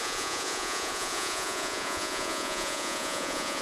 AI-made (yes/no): yes